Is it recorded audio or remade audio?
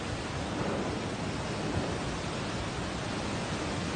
recorded